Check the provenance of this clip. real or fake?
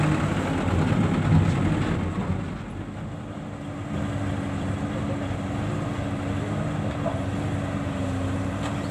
real